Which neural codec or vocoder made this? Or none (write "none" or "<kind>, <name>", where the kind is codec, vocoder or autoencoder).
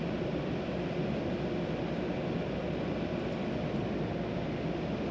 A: none